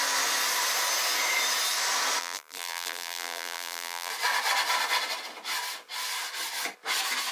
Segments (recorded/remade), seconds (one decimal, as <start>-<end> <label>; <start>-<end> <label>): 0.0-2.2 recorded; 2.2-4.1 remade; 4.1-7.3 recorded